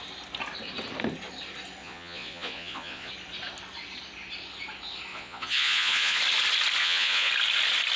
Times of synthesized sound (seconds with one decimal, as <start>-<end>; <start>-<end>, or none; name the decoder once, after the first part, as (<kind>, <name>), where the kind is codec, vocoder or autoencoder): 1.8-3.1 (vocoder, Vocos); 5.1-6.2; 6.8-7.3